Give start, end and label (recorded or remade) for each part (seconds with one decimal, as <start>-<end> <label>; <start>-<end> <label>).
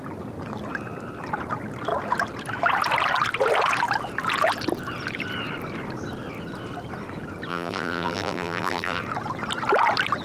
0.0-7.5 recorded; 7.5-9.0 remade; 9.0-10.2 recorded